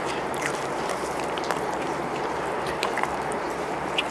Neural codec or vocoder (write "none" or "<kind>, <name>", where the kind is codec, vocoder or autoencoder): vocoder, BigVGAN v2